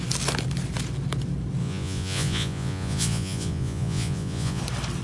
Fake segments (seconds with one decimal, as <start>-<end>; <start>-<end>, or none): 1.6-4.6